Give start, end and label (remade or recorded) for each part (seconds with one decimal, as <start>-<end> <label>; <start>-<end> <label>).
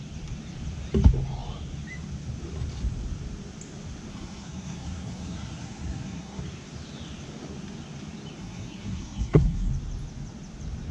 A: 0.0-4.1 recorded; 4.1-6.4 remade; 6.4-8.4 recorded; 8.4-9.7 remade; 9.7-10.9 recorded